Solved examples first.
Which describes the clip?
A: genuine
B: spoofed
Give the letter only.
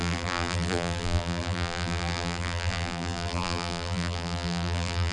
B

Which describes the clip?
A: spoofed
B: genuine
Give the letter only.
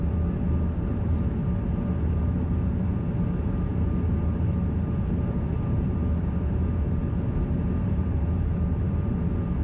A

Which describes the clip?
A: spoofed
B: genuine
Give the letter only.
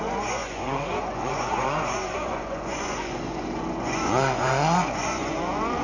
A